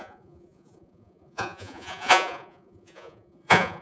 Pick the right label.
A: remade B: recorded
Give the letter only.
A